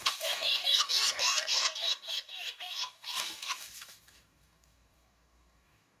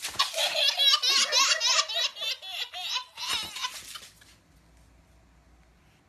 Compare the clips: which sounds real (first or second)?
second